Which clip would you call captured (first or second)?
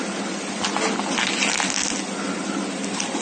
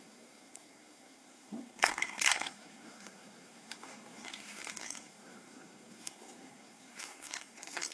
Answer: first